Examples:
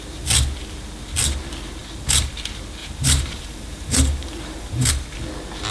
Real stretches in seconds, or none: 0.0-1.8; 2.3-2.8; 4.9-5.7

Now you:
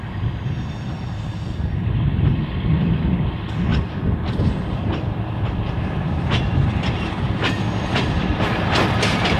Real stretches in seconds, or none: 0.0-3.7; 8.9-9.4